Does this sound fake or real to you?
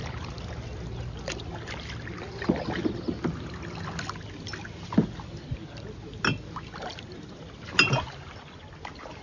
real